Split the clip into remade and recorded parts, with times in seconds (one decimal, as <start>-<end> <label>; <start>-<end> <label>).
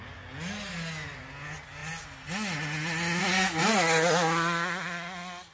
0.0-5.5 recorded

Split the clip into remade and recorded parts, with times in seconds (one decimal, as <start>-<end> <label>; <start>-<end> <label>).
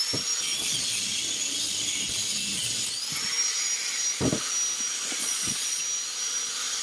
0.0-5.2 recorded; 5.2-5.8 remade; 5.8-6.8 recorded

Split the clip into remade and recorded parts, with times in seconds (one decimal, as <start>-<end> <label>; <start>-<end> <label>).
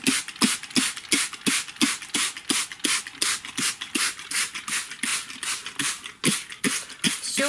0.0-7.5 recorded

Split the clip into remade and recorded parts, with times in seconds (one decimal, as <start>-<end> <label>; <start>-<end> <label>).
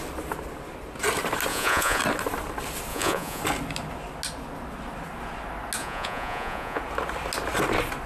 0.0-1.5 recorded; 1.5-2.0 remade; 2.0-2.9 recorded; 2.9-3.4 remade; 3.4-5.8 recorded; 5.8-6.8 remade; 6.8-8.1 recorded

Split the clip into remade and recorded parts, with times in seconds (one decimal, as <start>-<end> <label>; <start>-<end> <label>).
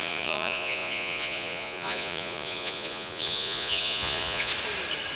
0.0-4.5 remade; 4.5-5.2 recorded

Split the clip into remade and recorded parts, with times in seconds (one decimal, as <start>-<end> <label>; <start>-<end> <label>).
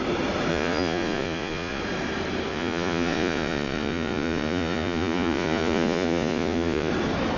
0.0-0.5 recorded; 0.5-1.8 remade; 1.8-2.5 recorded; 2.5-6.9 remade; 6.9-7.4 recorded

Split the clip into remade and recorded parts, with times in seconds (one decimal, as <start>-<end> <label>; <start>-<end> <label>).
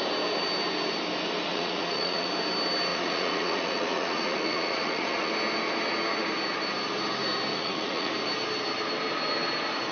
0.0-1.5 recorded; 1.5-2.3 remade; 2.3-2.9 recorded; 2.9-5.3 remade; 5.3-7.5 recorded; 7.5-8.1 remade; 8.1-9.9 recorded